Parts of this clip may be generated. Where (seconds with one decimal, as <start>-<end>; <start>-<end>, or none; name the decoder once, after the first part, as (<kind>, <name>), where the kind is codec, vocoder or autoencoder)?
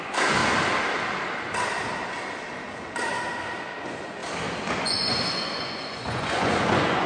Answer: 0.0-0.4 (vocoder, Vocos); 3.8-4.2; 4.8-7.1